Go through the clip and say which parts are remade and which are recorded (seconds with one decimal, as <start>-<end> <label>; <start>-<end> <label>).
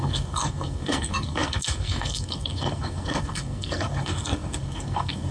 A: 0.0-5.3 remade